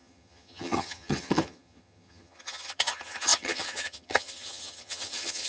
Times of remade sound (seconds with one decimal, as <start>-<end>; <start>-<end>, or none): 0.0-5.5